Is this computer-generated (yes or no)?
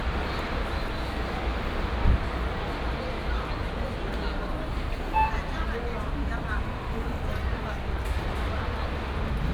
no